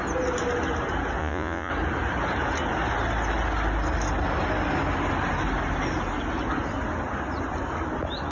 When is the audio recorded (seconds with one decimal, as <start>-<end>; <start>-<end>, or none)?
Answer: 0.0-1.2; 1.7-8.3